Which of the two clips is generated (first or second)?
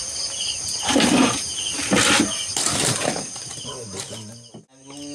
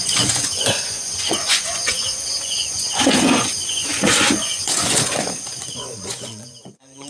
second